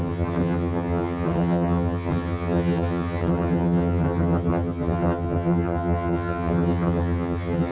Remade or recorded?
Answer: remade